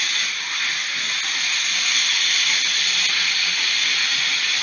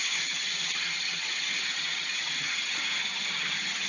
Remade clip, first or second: second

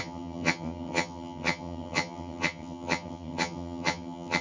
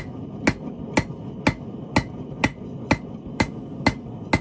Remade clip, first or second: first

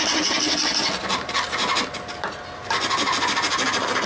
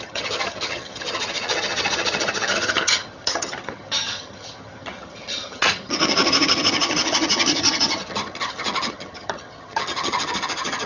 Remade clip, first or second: second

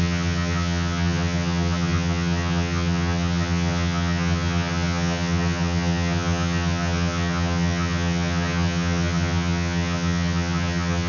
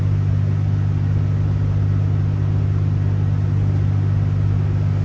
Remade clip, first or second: first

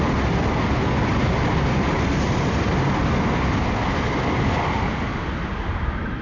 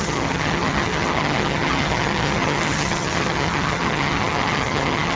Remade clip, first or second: second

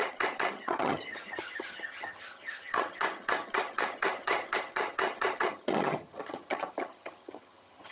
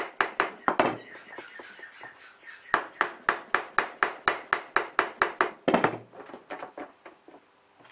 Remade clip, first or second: first